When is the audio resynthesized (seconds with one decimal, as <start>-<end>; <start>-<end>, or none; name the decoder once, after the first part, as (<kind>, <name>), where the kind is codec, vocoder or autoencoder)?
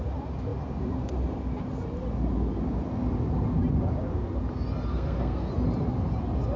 4.9-5.5 (codec, SNAC)